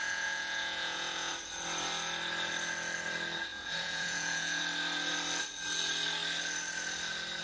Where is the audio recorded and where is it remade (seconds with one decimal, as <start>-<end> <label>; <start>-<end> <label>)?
0.0-1.3 remade; 1.3-3.5 recorded; 3.5-4.6 remade; 4.6-7.4 recorded